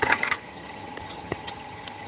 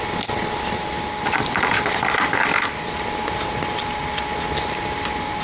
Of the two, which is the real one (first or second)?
second